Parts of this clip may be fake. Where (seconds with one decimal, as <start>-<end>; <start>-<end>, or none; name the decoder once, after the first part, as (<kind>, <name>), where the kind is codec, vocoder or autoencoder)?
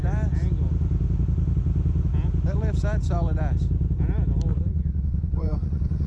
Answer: 4.5-6.1 (vocoder, Vocos)